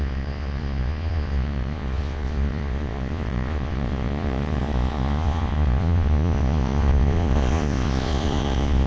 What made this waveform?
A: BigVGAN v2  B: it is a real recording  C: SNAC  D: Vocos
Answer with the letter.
D